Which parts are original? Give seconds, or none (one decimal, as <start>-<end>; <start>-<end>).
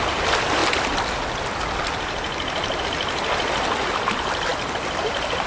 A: 0.0-5.5